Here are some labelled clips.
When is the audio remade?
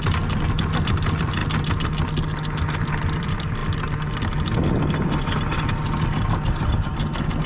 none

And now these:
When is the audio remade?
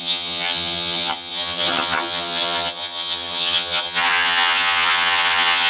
0.0-5.7 (vocoder, HiFi-GAN)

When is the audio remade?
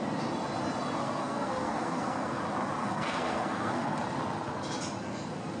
1.0-2.4 (codec, SNAC); 2.8-4.0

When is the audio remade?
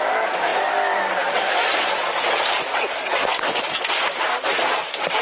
none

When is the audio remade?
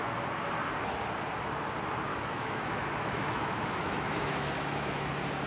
2.1-5.1 (autoencoder, DAC-VAE)